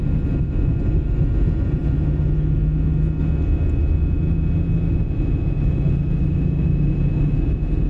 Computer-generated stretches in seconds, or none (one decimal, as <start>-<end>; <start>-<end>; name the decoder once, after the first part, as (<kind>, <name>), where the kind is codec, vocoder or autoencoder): none